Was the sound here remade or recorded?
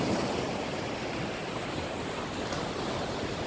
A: recorded